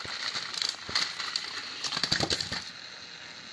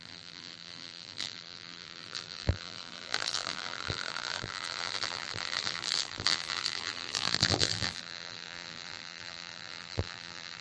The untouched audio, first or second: first